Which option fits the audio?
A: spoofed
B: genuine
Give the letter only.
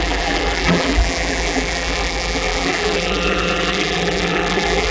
A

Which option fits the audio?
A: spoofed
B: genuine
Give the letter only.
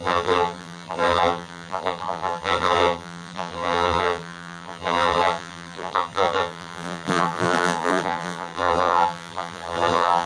A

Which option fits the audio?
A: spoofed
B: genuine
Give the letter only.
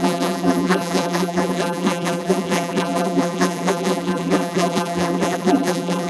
A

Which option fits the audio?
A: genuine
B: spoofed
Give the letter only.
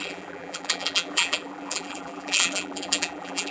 B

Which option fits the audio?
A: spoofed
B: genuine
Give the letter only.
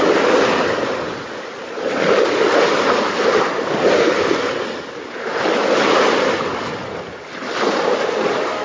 B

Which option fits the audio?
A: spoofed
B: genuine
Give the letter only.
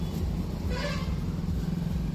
B